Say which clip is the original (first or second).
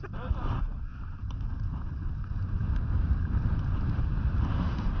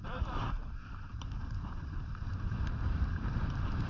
first